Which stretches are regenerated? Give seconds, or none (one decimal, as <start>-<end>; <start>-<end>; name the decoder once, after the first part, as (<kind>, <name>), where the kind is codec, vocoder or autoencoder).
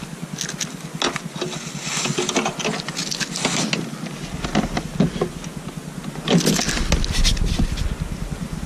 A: none